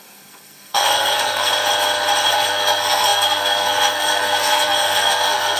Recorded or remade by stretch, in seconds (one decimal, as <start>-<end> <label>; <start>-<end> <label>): 0.0-1.5 remade; 1.5-2.3 recorded; 2.3-5.6 remade